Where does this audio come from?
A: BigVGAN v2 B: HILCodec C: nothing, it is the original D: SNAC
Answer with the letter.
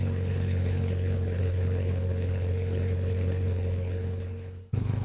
B